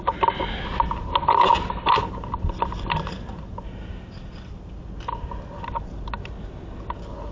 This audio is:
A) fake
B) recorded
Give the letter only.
B